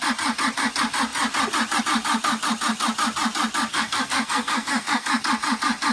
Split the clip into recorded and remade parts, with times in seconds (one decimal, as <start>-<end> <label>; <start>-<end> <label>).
0.0-3.7 recorded; 3.7-5.2 remade; 5.2-5.9 recorded